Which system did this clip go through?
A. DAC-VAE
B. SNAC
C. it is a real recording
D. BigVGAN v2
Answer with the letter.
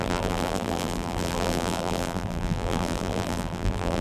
D